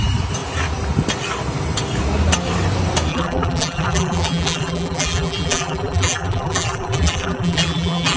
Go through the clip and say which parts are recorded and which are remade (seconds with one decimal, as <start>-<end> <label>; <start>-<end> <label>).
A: 0.0-3.1 recorded; 3.1-8.2 remade